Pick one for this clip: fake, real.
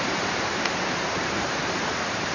fake